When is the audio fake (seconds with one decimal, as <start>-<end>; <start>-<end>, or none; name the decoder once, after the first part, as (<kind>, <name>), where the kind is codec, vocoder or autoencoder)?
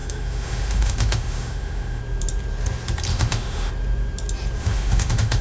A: 0.0-2.0 (autoencoder, DAC-VAE); 3.1-3.7; 4.6-5.4